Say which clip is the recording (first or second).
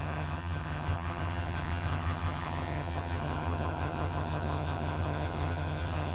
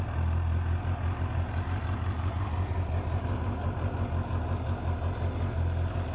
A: second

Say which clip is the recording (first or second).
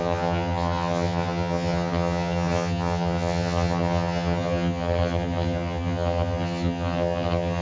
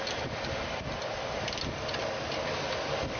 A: second